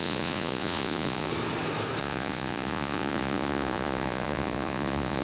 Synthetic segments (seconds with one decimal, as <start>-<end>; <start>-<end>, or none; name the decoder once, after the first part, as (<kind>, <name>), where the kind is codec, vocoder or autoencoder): 0.0-1.3 (vocoder, Vocos); 2.0-5.2